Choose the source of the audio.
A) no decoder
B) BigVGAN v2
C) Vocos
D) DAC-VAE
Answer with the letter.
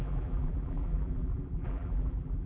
B